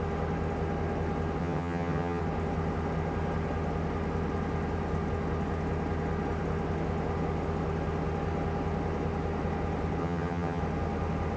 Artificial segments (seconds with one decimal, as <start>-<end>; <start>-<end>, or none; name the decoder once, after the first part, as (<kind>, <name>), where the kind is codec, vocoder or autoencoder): 1.4-2.2 (vocoder, HiFi-GAN); 10.0-10.6